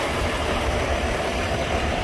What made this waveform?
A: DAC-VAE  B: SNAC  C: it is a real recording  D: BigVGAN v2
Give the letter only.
C